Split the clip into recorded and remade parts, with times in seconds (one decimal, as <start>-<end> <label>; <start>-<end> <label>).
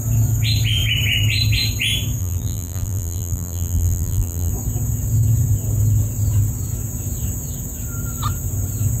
0.0-2.2 recorded; 2.2-4.5 remade; 4.5-9.0 recorded